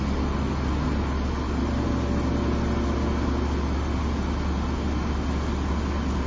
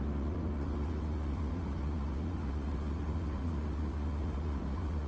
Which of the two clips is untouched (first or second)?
first